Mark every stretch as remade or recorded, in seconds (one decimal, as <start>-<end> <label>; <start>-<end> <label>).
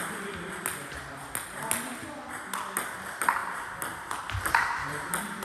0.0-5.4 recorded